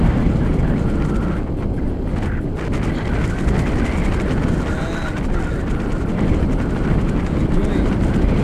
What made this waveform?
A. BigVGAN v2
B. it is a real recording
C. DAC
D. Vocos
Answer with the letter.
B